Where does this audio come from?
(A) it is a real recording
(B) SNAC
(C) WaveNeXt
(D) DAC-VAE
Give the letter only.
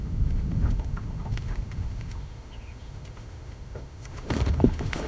D